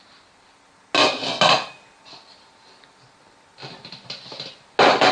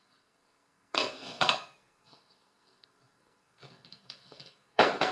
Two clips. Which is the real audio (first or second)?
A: first